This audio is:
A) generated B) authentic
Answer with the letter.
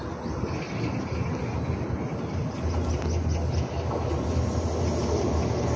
B